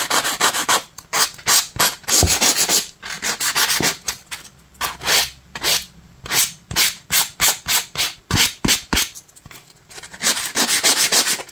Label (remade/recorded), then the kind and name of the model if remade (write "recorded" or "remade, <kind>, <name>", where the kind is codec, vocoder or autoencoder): recorded